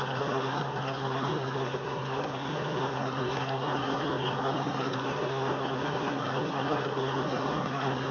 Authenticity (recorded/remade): remade